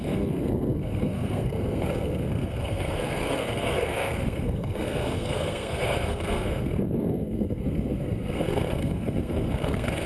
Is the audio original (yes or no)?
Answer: no